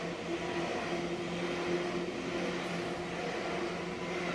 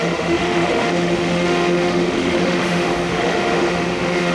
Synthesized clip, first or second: second